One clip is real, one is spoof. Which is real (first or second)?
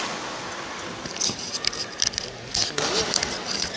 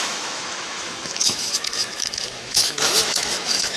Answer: first